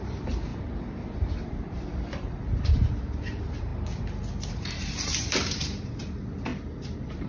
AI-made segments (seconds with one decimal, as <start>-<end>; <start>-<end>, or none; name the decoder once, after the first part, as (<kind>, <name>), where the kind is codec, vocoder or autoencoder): 0.0-0.5 (vocoder, BigVGAN v2); 1.4-3.7; 4.5-7.3

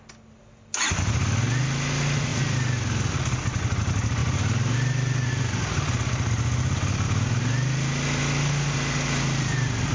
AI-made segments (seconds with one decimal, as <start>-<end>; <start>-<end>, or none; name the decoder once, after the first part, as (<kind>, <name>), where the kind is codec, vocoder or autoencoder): none

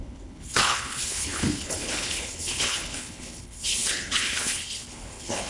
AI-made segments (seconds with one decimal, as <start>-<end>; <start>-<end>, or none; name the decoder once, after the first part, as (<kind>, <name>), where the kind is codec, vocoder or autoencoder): 0.0-5.5 (codec, HILCodec)

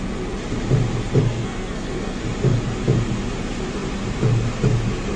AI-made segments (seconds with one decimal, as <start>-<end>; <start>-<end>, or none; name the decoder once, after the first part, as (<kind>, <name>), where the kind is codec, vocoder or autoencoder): 1.2-2.2 (codec, SNAC)